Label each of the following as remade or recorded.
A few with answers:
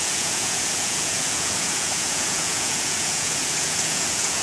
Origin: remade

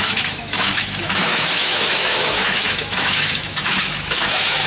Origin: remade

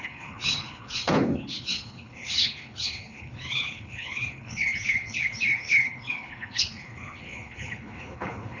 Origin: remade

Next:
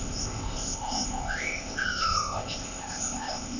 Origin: remade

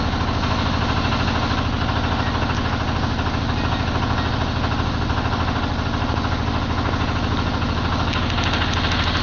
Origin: recorded